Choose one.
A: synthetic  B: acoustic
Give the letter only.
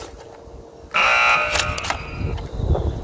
B